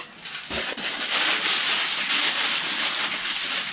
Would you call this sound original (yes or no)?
yes